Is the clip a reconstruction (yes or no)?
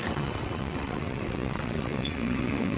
yes